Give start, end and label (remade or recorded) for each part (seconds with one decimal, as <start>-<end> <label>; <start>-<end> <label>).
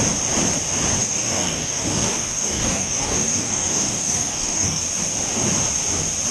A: 0.0-1.0 recorded; 1.0-4.8 remade; 4.8-6.3 recorded